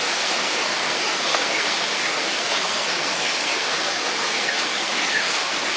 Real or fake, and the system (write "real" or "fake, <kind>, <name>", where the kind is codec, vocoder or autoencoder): fake, codec, SNAC